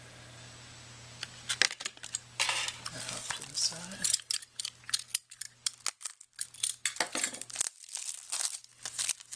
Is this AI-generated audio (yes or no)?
no